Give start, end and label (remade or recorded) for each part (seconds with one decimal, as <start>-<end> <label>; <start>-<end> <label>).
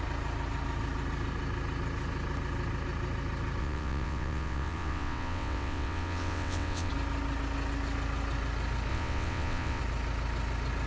0.0-3.6 recorded; 3.6-6.9 remade; 6.9-8.9 recorded; 8.9-9.8 remade; 9.8-10.9 recorded